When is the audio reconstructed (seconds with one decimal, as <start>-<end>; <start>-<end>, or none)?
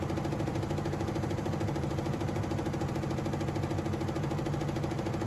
0.5-2.9